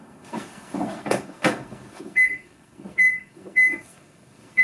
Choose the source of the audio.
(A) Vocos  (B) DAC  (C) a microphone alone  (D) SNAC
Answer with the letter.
D